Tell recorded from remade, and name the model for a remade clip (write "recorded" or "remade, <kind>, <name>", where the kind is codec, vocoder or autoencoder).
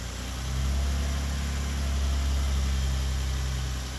recorded